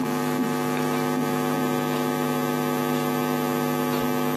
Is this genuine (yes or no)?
yes